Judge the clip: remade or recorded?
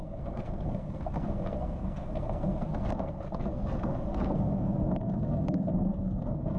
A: remade